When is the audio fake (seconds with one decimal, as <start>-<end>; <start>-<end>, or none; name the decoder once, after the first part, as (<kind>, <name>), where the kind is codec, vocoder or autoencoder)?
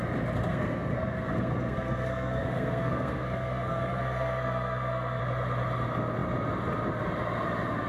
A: 0.5-5.2 (codec, SNAC)